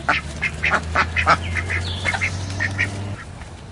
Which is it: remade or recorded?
recorded